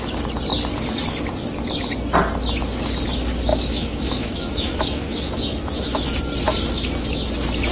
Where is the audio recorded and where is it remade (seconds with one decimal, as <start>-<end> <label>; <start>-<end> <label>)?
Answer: 0.0-3.5 recorded; 3.5-6.2 remade; 6.2-7.7 recorded